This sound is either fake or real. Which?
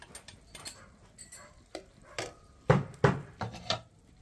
real